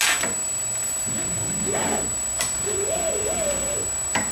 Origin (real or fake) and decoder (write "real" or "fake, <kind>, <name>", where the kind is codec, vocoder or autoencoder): real